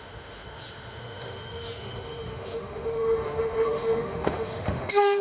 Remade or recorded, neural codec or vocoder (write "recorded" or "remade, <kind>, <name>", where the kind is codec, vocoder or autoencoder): remade, autoencoder, DAC-VAE